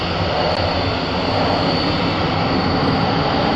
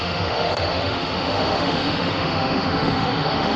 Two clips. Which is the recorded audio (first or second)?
first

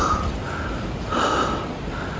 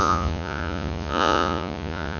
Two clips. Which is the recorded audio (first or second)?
first